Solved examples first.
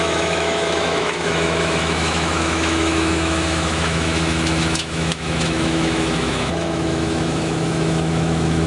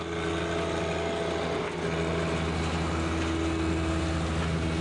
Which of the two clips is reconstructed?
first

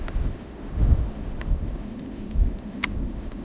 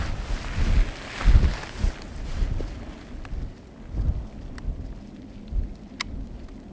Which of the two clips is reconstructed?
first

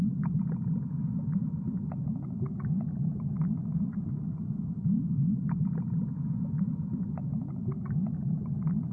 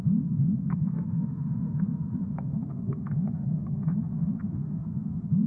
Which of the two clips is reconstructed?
second